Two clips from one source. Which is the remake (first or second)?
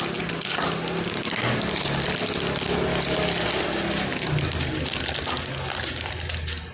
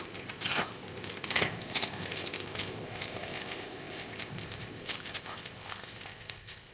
second